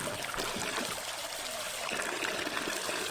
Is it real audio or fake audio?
real